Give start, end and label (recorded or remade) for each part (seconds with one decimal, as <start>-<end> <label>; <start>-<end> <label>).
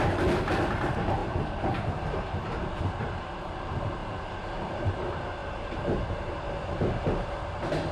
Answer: 0.0-4.0 recorded; 4.0-4.8 remade; 4.8-7.9 recorded